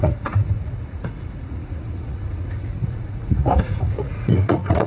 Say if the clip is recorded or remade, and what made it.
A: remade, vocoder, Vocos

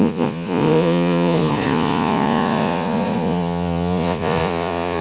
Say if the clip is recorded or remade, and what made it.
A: remade, vocoder, Vocos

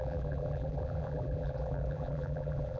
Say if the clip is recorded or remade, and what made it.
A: remade, vocoder, BigVGAN v2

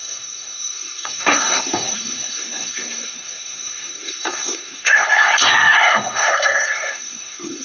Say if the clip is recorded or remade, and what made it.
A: remade, codec, SNAC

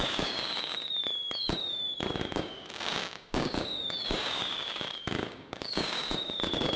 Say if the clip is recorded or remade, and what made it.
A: remade, codec, DAC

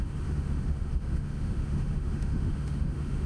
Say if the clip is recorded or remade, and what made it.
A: remade, autoencoder, DAC-VAE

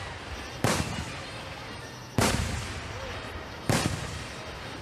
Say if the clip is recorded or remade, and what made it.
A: recorded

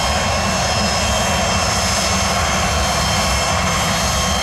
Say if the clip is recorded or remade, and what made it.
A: recorded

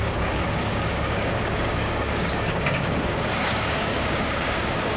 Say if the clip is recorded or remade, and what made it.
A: remade, codec, DAC